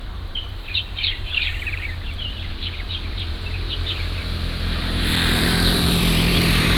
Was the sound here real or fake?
fake